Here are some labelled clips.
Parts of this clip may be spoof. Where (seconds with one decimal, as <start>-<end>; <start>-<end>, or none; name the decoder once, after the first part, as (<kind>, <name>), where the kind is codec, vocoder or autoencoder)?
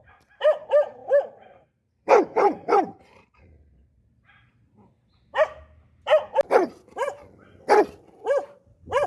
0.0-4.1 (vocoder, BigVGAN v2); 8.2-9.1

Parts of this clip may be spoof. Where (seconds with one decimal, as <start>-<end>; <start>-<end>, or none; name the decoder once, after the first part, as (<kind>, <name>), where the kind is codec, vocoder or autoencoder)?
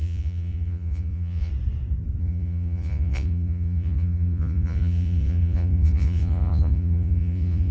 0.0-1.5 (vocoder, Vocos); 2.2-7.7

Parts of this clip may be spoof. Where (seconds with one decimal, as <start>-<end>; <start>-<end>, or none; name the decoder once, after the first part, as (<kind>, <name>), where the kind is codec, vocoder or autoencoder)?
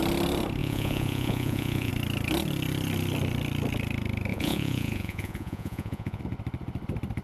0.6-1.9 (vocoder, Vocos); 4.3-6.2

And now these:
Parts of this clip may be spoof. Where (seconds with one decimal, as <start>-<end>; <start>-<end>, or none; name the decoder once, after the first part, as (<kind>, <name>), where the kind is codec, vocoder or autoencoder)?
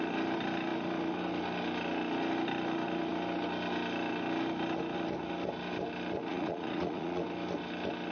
6.3-7.2 (vocoder, Vocos)